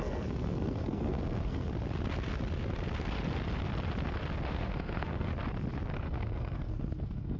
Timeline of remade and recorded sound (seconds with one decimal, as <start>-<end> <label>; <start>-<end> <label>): 0.0-1.7 remade; 1.7-4.5 recorded; 4.5-5.3 remade; 5.3-6.0 recorded; 6.0-7.4 remade